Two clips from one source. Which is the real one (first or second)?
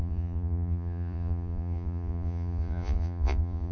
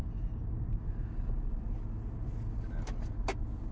second